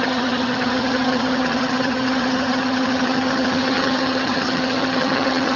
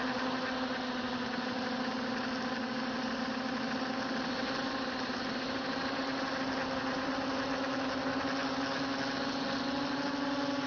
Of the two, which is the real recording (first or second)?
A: second